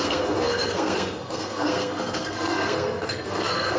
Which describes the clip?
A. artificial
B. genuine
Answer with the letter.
A